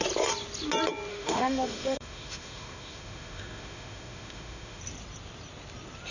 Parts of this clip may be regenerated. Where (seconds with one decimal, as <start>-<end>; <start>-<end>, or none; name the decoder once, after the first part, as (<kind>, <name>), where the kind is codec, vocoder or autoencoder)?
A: 1.1-4.8 (autoencoder, DAC-VAE)